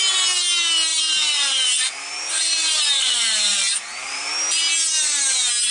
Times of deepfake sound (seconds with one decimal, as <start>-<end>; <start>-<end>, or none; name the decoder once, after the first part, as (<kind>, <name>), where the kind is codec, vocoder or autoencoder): 0.9-2.8 (vocoder, BigVGAN v2); 3.5-4.3